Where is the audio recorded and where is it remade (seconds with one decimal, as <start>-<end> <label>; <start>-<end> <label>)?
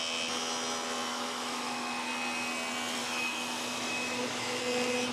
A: 0.0-1.1 recorded; 1.1-2.1 remade; 2.1-3.0 recorded; 3.0-4.6 remade; 4.6-5.1 recorded